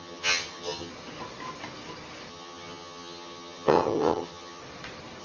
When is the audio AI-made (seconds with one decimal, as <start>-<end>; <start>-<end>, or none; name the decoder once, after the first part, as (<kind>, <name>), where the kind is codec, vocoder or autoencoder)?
0.0-0.9 (vocoder, HiFi-GAN); 2.3-4.6